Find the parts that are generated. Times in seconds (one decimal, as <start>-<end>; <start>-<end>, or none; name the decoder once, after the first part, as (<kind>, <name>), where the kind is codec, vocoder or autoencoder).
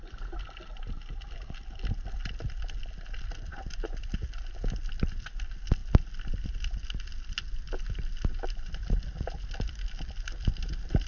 3.5-4.4 (vocoder, BigVGAN v2)